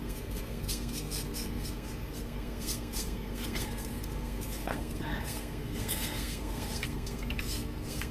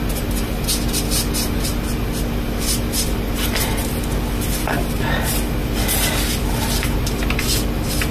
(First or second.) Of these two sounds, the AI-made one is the first